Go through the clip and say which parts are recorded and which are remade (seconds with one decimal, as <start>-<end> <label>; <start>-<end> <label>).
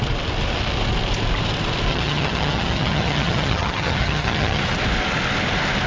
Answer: 0.0-1.9 recorded; 1.9-4.6 remade; 4.6-5.9 recorded